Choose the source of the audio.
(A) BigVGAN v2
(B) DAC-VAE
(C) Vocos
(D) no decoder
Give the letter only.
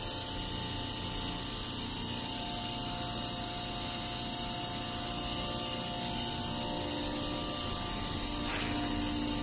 D